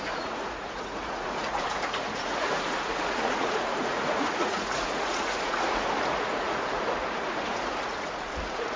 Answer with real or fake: fake